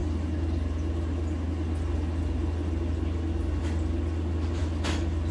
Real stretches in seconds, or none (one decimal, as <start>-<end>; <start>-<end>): 0.0-5.3